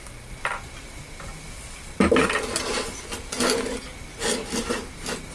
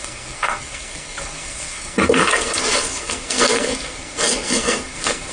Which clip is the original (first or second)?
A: first